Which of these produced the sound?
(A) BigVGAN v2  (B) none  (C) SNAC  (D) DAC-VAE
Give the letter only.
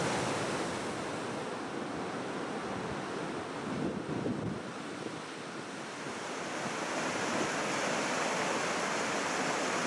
B